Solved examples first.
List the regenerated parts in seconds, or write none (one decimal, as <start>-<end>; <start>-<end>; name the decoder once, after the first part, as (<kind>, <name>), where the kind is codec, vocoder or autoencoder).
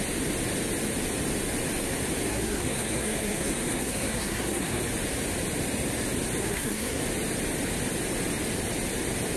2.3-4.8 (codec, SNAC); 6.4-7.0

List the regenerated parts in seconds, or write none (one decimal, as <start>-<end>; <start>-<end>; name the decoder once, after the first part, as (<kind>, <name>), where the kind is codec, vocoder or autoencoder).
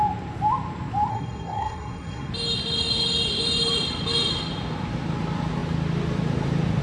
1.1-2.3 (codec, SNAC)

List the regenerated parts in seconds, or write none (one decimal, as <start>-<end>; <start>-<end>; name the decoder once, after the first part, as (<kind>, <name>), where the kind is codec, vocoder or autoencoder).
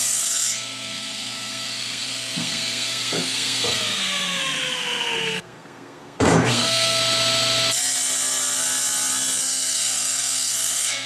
0.0-7.0 (codec, SNAC); 9.4-11.1